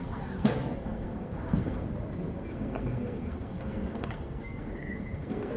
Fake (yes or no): yes